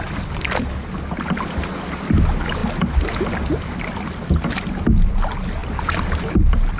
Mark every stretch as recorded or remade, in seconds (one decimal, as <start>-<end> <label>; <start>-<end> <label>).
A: 0.0-6.8 recorded